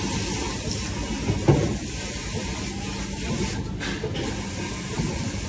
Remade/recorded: recorded